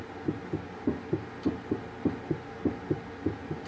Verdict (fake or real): real